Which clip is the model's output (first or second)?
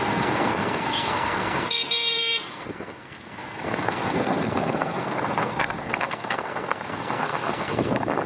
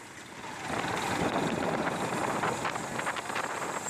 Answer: first